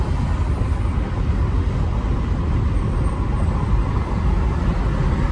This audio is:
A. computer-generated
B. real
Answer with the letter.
B